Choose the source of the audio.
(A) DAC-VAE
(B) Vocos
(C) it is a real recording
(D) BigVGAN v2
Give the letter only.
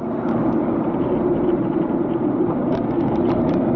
D